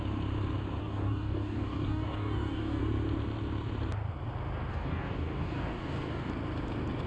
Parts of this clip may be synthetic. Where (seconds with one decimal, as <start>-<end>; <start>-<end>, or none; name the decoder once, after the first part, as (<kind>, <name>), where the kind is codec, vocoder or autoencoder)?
0.8-2.8 (codec, DAC); 4.7-6.3